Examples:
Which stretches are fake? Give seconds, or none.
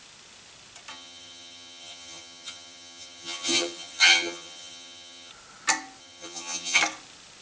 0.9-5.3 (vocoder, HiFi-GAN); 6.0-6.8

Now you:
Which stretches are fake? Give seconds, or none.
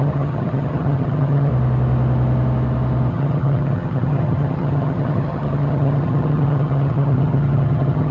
0.0-1.5 (vocoder, HiFi-GAN); 3.1-8.1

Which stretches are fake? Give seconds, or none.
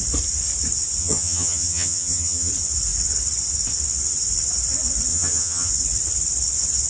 1.0-2.5 (vocoder, HiFi-GAN); 5.1-5.7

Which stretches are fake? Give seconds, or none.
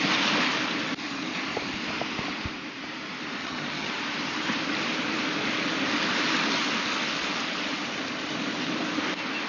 3.4-3.9 (vocoder, HiFi-GAN)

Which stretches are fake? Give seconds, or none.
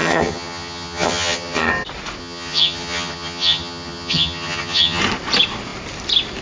0.0-1.7 (vocoder, HiFi-GAN); 2.2-5.0